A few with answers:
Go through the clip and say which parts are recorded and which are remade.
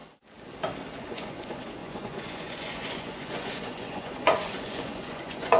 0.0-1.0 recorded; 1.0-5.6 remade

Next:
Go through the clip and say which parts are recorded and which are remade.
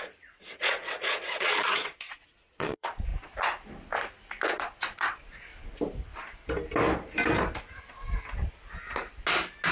0.0-3.1 remade; 3.1-4.5 recorded; 4.5-5.5 remade; 5.5-9.7 recorded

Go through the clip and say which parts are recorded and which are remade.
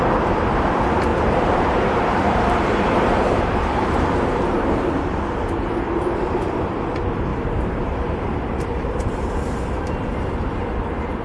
0.0-1.1 recorded; 1.1-4.9 remade; 4.9-7.3 recorded; 7.3-9.4 remade; 9.4-11.2 recorded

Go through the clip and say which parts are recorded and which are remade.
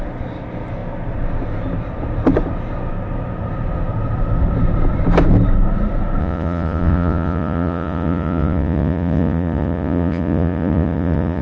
0.0-6.2 recorded; 6.2-11.4 remade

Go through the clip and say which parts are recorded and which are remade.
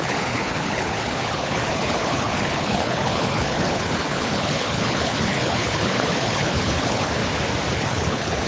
0.0-7.2 remade; 7.2-7.7 recorded; 7.7-8.5 remade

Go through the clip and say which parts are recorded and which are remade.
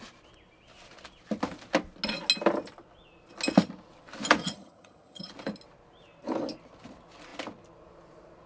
0.0-4.4 recorded; 4.4-5.3 remade; 5.3-8.5 recorded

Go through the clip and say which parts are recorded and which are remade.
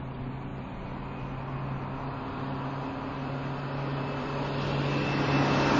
0.0-5.8 recorded